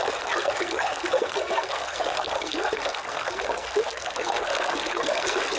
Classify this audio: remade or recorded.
remade